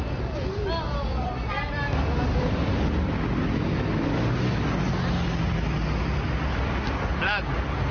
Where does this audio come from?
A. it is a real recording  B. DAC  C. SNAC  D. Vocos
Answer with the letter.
A